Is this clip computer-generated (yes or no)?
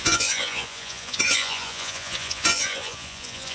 yes